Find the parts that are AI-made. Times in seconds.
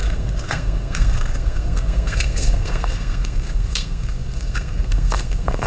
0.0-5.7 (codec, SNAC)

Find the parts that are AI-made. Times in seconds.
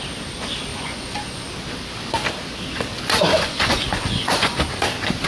0.7-1.5 (vocoder, Vocos); 3.3-4.7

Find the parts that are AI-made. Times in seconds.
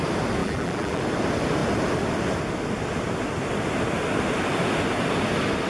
0.4-1.0 (vocoder, BigVGAN v2)